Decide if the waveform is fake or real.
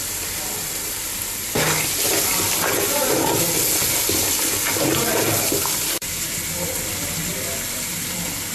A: real